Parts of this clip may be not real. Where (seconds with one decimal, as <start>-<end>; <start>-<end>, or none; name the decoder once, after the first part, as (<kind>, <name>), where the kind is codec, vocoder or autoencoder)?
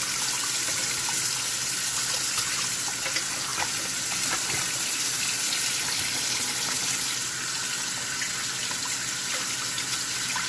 none